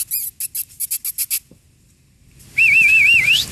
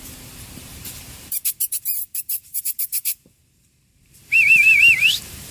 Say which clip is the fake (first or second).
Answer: second